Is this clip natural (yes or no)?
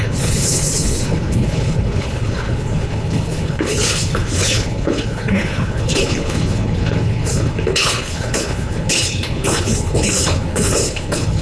no